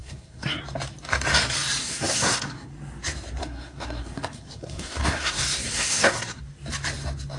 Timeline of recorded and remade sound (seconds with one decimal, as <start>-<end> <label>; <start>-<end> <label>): 0.0-0.6 remade; 0.6-1.8 recorded; 1.8-2.7 remade; 2.7-3.4 recorded; 3.4-6.4 remade; 6.4-7.4 recorded